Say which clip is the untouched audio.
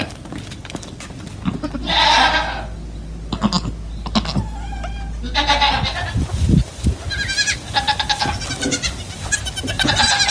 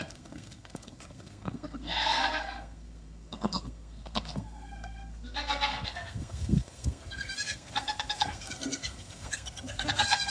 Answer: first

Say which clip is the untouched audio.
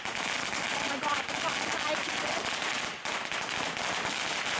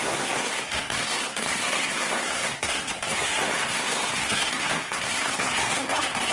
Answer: first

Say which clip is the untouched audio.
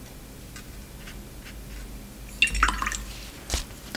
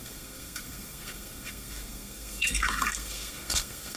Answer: first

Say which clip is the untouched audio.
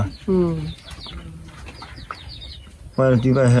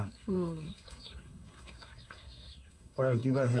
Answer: first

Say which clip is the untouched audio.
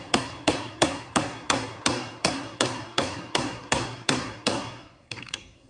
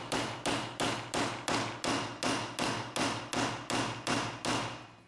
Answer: second